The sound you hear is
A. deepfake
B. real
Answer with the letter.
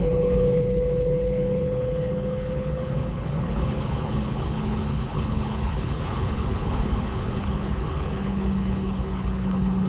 A